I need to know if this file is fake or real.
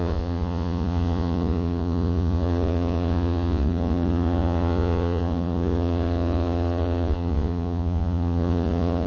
fake